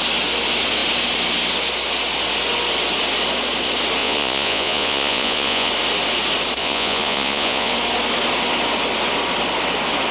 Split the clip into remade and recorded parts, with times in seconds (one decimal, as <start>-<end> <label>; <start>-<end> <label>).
0.0-4.0 recorded; 4.0-5.7 remade; 5.7-6.6 recorded; 6.6-7.7 remade; 7.7-10.1 recorded